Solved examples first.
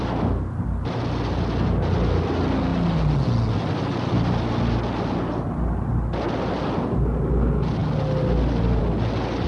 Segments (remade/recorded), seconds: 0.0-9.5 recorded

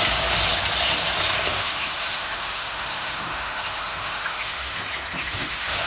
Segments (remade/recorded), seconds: 0.0-1.5 recorded; 1.5-4.8 remade; 4.8-5.2 recorded; 5.2-5.9 remade

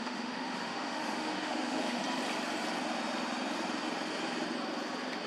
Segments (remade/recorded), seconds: 0.0-2.0 remade; 2.0-5.3 recorded

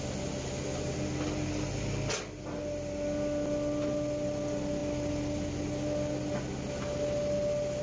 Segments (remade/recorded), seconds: 0.0-7.8 recorded